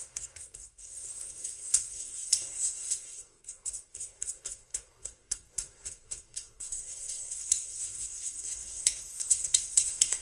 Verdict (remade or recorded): remade